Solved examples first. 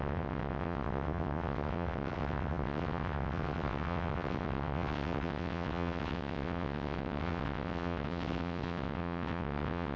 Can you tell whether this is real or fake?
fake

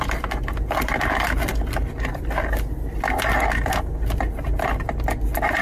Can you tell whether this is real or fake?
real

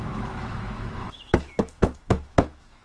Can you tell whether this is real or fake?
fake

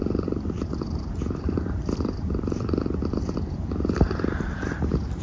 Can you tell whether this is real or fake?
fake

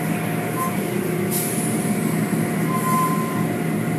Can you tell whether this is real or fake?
real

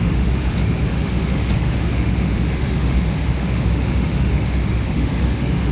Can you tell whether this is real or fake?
fake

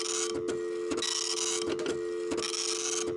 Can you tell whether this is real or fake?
real